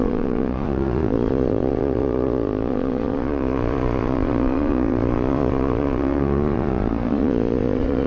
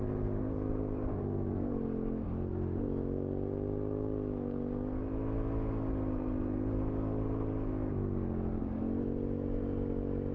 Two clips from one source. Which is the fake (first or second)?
first